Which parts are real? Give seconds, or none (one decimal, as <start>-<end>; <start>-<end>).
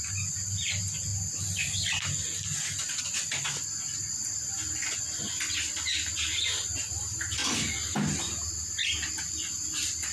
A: 0.0-10.1